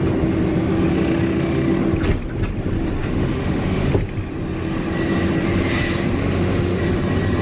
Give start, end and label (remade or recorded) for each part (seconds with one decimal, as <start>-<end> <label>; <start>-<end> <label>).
0.0-0.9 recorded; 0.9-1.8 remade; 1.8-3.0 recorded; 3.0-3.9 remade; 3.9-6.2 recorded; 6.2-6.8 remade; 6.8-7.4 recorded